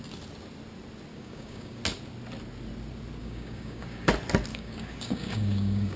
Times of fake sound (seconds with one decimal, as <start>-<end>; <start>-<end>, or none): 1.1-1.8; 3.2-4.1; 4.5-6.0